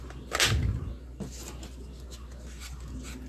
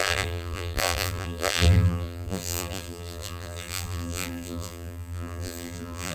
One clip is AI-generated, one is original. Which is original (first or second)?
first